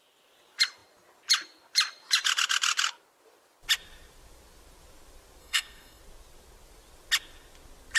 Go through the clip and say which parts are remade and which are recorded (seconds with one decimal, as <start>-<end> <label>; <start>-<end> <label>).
0.0-5.4 recorded; 5.4-6.0 remade; 6.0-8.0 recorded